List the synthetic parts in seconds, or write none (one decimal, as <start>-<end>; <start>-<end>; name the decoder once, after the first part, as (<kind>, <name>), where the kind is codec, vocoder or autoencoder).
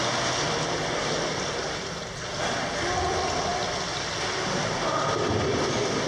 none